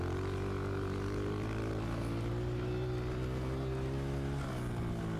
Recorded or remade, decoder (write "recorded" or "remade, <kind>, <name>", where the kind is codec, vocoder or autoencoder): recorded